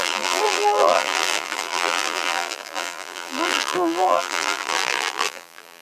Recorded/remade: remade